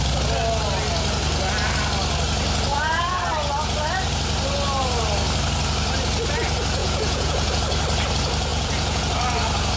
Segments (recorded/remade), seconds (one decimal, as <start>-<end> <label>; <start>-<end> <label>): 0.0-2.7 recorded; 2.7-3.2 remade; 3.2-6.8 recorded; 6.8-7.5 remade; 7.5-8.5 recorded; 8.5-9.0 remade; 9.0-9.8 recorded